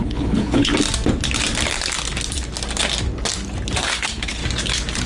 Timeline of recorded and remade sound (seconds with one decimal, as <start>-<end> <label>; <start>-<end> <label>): 0.0-0.7 remade; 0.7-3.8 recorded; 3.8-4.4 remade; 4.4-5.1 recorded